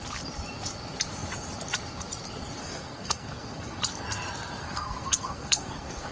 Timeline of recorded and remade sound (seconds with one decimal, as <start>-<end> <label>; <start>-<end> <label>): 0.0-2.6 recorded; 2.6-3.8 remade; 3.8-4.6 recorded; 4.6-6.1 remade